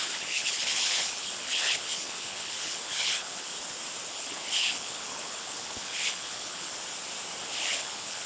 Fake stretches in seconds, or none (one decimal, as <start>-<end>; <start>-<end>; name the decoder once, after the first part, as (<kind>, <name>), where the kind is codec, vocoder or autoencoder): 0.0-3.5 (codec, HILCodec); 4.1-6.7; 7.5-8.3